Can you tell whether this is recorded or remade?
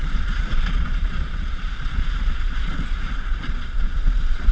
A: remade